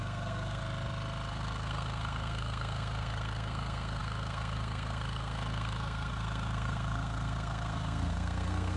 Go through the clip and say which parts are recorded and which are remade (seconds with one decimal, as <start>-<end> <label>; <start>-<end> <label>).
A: 0.0-0.6 remade; 0.6-1.3 recorded; 1.3-8.8 remade